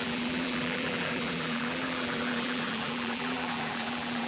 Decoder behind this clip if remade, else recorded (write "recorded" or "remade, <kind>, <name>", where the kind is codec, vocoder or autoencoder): remade, vocoder, BigVGAN v2